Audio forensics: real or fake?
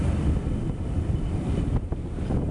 real